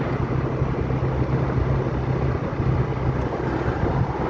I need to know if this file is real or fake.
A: real